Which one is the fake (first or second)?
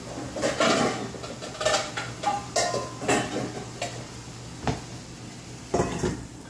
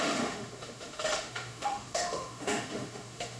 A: second